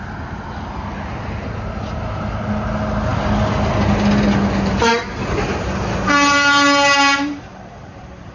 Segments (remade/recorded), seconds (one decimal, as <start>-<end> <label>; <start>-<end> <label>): 0.0-8.3 recorded